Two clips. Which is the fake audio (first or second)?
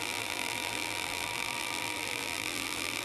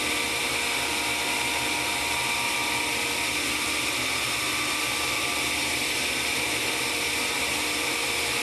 first